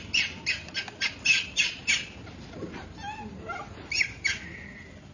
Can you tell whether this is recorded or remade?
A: recorded